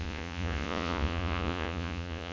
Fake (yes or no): yes